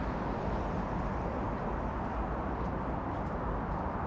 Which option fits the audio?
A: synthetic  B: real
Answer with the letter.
B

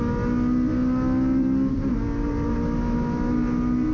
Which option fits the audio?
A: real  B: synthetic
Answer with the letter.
A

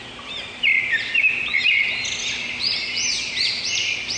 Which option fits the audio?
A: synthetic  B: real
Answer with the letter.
B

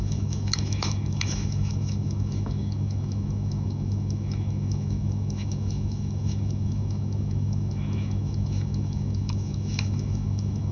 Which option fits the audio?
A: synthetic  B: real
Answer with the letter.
A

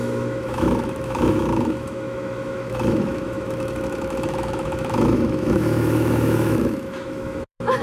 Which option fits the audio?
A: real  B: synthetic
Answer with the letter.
B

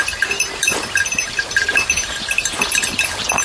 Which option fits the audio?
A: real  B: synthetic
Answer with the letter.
B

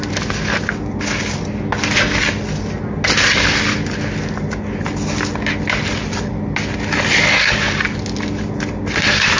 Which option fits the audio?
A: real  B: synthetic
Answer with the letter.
A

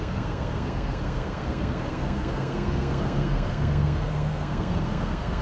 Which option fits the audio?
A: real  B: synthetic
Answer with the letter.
B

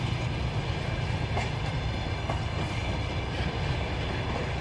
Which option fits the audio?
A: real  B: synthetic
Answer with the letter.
A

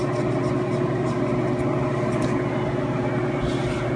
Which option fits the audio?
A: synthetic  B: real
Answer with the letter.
B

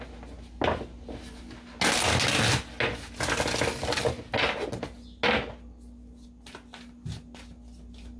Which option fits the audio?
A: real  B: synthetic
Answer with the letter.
A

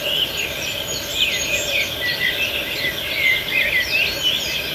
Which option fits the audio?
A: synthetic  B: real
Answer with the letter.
B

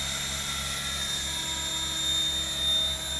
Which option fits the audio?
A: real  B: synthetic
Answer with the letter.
A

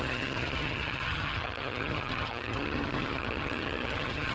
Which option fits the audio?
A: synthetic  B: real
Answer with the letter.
A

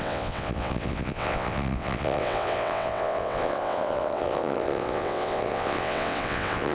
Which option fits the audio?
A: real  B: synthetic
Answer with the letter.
B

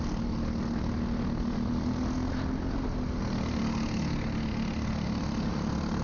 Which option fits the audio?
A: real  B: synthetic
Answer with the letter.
A